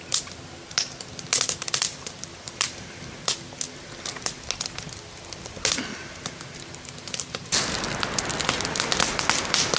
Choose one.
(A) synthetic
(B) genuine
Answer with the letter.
B